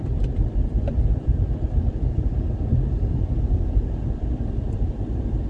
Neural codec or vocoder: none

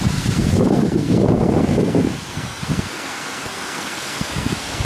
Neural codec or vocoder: codec, SNAC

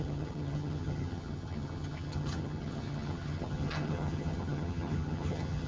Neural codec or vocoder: vocoder, HiFi-GAN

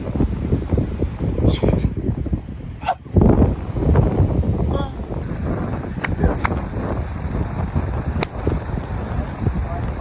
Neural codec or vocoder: none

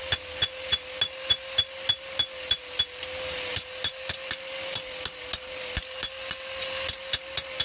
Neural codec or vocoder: none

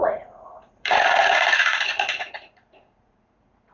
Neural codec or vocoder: vocoder, Vocos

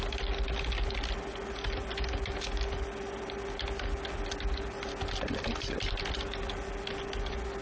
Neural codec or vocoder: none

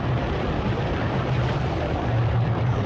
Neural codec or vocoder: none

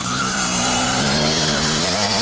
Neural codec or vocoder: vocoder, BigVGAN v2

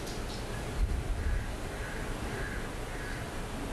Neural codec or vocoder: vocoder, BigVGAN v2